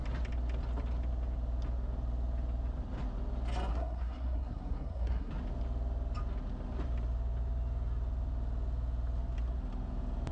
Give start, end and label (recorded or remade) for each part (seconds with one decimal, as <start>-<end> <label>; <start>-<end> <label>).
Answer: 0.0-3.7 recorded; 3.7-5.3 remade; 5.3-10.3 recorded